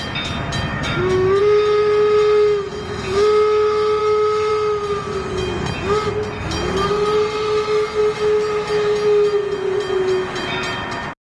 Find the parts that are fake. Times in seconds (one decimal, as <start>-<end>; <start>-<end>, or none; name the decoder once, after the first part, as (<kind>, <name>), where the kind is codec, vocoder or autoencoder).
0.7-1.4 (autoencoder, DAC-VAE); 4.0-4.5